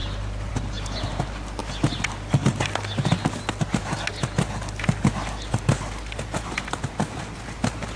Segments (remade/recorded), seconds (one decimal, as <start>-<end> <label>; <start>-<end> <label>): 0.0-8.0 recorded